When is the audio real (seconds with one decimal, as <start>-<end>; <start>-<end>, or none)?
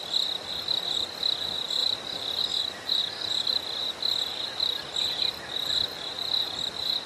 0.0-7.1